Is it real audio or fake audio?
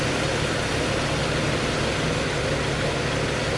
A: real